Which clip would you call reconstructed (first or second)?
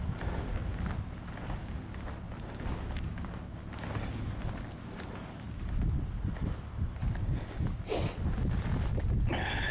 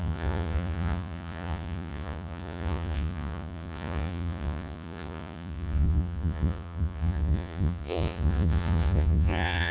second